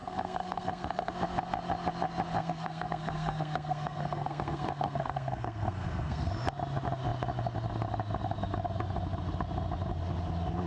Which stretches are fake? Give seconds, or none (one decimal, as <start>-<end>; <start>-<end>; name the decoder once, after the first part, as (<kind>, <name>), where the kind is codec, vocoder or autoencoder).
0.0-1.1 (codec, SNAC); 2.4-6.3